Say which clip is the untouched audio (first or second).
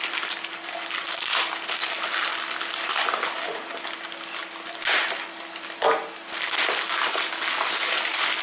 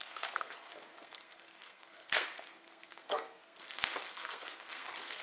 first